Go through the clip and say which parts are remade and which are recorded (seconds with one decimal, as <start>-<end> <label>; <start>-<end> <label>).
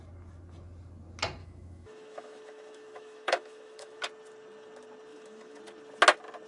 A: 0.0-1.4 recorded; 1.4-4.0 remade; 4.0-5.1 recorded; 5.1-5.6 remade; 5.6-6.5 recorded